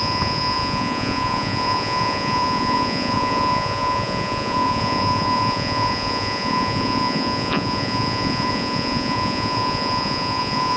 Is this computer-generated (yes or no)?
yes